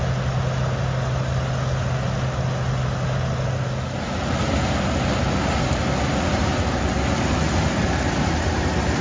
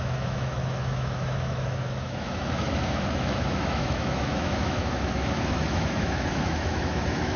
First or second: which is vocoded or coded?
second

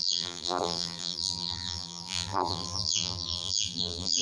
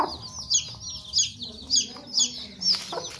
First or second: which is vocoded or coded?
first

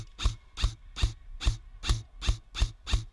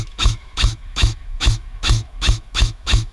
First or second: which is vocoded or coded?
second